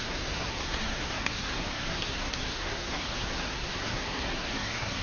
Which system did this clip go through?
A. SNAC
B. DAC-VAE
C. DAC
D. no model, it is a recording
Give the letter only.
A